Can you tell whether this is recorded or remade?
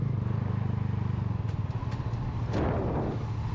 recorded